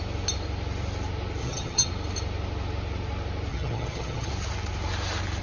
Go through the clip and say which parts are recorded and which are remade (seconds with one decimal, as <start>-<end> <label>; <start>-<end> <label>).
0.0-1.4 recorded; 1.4-1.9 remade; 1.9-3.5 recorded; 3.5-4.3 remade; 4.3-5.4 recorded